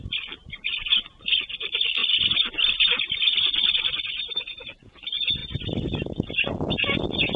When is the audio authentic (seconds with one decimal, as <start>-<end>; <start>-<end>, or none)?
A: 0.0-7.4